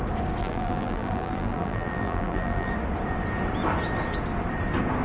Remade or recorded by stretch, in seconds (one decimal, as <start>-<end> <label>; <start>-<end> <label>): 0.0-0.4 recorded; 0.4-2.7 remade; 2.7-5.0 recorded